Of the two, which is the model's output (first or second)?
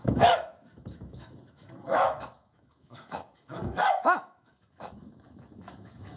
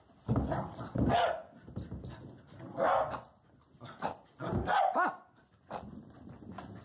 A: first